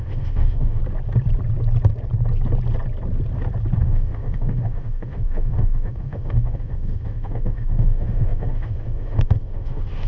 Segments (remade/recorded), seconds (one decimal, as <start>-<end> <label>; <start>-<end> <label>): 0.0-0.8 remade; 0.8-3.8 recorded; 3.8-10.1 remade